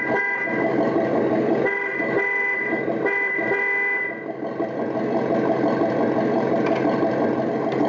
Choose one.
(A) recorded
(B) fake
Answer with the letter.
A